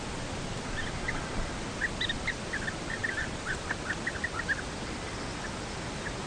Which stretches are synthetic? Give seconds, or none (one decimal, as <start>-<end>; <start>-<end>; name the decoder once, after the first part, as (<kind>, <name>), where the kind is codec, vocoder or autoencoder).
none